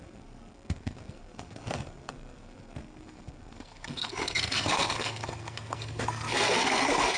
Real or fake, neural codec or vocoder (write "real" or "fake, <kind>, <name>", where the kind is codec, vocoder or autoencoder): fake, codec, SNAC